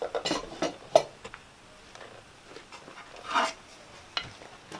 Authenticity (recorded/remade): recorded